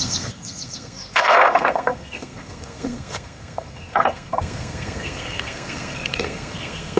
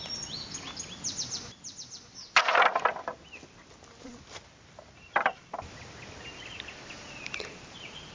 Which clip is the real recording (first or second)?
second